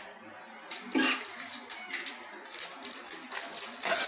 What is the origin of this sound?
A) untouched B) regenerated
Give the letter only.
A